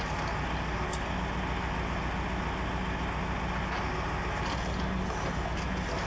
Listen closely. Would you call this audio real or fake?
real